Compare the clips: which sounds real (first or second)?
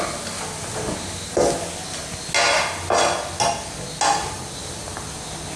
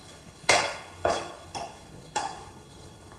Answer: first